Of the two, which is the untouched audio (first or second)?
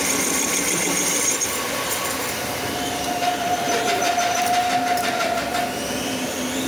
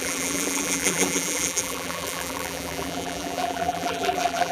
first